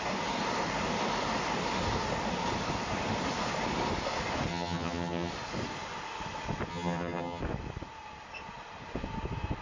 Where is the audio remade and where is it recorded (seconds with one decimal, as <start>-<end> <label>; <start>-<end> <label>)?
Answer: 0.0-4.5 recorded; 4.5-5.3 remade; 5.3-6.7 recorded; 6.7-7.4 remade; 7.4-9.6 recorded